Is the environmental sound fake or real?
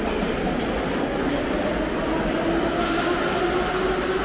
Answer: real